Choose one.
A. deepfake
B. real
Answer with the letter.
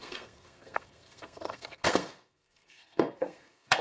A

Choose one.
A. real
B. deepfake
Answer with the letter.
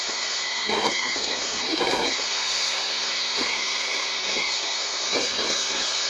B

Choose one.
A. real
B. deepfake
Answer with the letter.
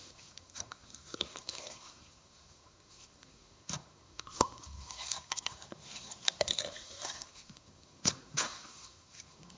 B